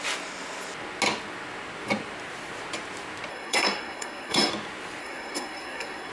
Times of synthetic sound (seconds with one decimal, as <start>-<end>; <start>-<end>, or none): 3.3-4.5; 5.0-6.1